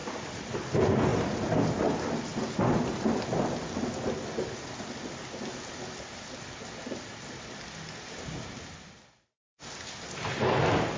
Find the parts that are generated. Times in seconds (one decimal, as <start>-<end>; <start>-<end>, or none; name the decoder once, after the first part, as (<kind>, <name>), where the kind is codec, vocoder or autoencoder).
0.0-0.7 (vocoder, BigVGAN v2); 1.1-1.8; 2.3-2.8